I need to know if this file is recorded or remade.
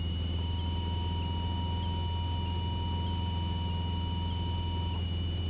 recorded